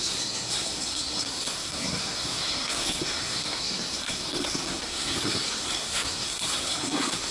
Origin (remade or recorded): remade